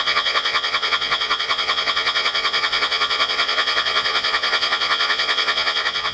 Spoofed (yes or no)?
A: yes